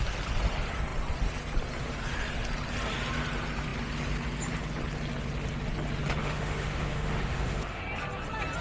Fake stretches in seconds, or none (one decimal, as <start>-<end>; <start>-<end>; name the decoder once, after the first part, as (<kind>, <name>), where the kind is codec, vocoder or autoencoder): 6.2-7.8 (autoencoder, DAC-VAE)